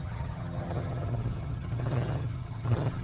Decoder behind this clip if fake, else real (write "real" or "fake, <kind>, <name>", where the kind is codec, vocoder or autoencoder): fake, vocoder, HiFi-GAN